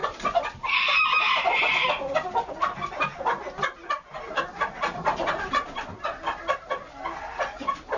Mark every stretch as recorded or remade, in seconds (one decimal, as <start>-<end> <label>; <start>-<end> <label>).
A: 0.0-8.0 recorded